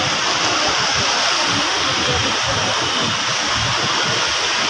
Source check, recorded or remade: recorded